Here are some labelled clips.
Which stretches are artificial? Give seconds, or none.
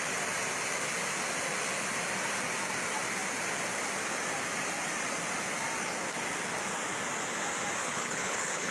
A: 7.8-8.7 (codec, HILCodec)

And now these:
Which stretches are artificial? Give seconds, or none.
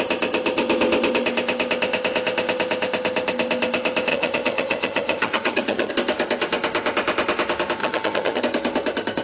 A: 4.1-5.9 (vocoder, HiFi-GAN); 7.8-8.4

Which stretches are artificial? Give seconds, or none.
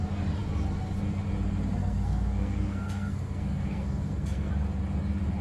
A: 1.8-4.5 (codec, SNAC)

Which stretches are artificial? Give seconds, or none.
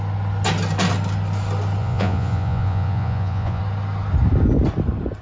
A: 1.8-3.6 (vocoder, Vocos)